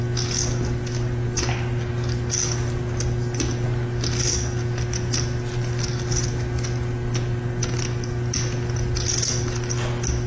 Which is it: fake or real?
real